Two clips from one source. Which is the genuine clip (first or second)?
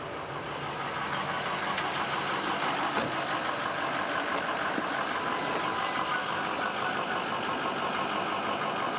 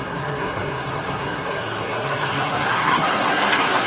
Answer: first